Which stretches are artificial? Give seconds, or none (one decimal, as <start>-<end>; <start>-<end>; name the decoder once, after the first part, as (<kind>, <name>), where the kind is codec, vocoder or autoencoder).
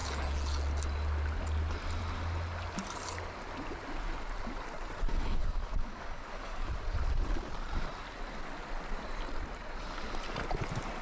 5.1-6.7 (codec, DAC)